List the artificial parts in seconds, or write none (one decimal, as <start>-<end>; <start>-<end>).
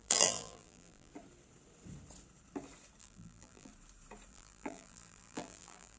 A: 0.0-1.1; 3.0-3.7; 4.3-6.0